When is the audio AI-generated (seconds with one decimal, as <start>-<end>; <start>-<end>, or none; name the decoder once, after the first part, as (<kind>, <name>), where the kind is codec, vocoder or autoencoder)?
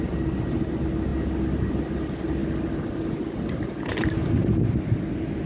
none